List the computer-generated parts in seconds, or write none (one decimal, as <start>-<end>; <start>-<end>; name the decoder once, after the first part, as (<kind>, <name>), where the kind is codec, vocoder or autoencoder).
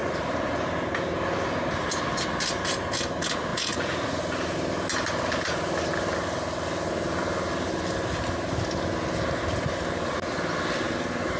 0.0-0.6 (vocoder, Vocos); 3.5-4.2